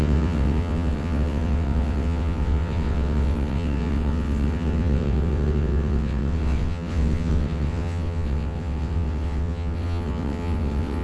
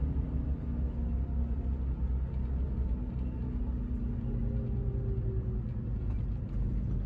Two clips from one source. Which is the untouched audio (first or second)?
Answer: second